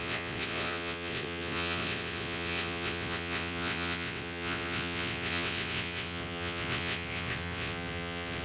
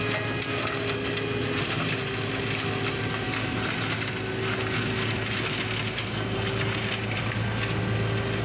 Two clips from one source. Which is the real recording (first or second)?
second